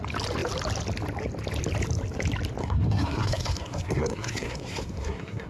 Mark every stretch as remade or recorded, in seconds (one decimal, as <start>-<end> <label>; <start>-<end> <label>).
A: 0.0-2.6 recorded; 2.6-5.5 remade